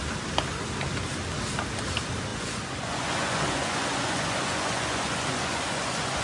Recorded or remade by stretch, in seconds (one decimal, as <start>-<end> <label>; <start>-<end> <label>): 0.0-2.3 recorded; 2.3-6.2 remade